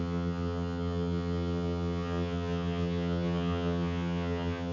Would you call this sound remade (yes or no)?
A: yes